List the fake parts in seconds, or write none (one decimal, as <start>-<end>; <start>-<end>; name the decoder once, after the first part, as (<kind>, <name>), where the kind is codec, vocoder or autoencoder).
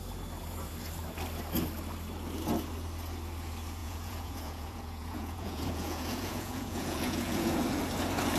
3.8-7.8 (vocoder, Vocos)